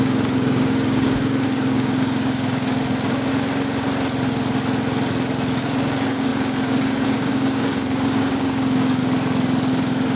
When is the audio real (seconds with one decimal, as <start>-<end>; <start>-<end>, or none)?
3.3-5.6; 9.0-9.7